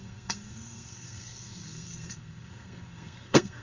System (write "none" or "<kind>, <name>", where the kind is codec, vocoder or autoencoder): codec, SNAC